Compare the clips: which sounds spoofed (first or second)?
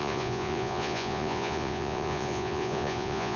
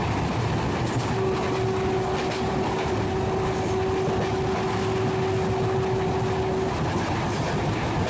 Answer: first